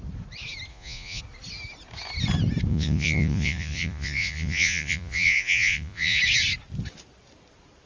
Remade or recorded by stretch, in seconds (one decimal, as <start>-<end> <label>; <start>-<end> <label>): 0.0-0.7 recorded; 0.7-1.2 remade; 1.2-2.7 recorded; 2.7-6.2 remade; 6.2-7.9 recorded